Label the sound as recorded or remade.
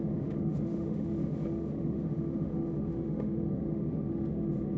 remade